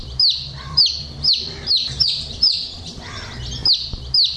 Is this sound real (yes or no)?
no